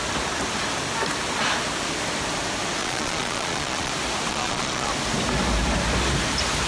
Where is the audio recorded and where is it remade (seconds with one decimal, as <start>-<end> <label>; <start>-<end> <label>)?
0.0-2.8 recorded; 2.8-3.9 remade; 3.9-4.3 recorded; 4.3-4.9 remade; 4.9-6.7 recorded

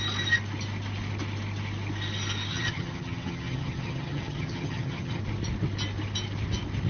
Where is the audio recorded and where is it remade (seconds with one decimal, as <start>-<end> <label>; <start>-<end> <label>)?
0.0-2.5 recorded; 2.5-5.2 remade; 5.2-6.9 recorded

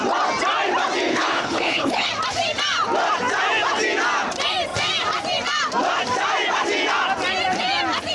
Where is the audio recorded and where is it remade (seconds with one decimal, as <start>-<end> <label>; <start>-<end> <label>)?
0.0-1.1 recorded; 1.1-2.1 remade; 2.1-8.1 recorded

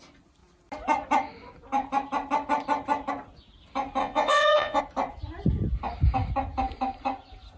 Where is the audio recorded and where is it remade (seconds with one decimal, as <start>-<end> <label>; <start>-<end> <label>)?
0.0-4.0 recorded; 4.0-4.8 remade; 4.8-7.6 recorded

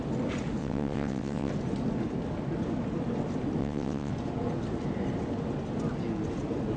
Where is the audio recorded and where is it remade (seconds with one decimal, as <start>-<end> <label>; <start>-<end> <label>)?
0.0-0.6 recorded; 0.6-1.5 remade; 1.5-3.6 recorded; 3.6-4.1 remade; 4.1-6.8 recorded

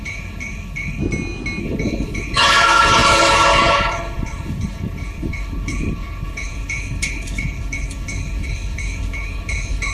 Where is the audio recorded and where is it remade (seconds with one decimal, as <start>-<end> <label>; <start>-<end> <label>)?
0.0-1.0 remade; 1.0-1.6 recorded; 1.6-9.9 remade